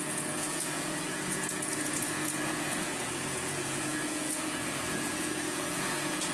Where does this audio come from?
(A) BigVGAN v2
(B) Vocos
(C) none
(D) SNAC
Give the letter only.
B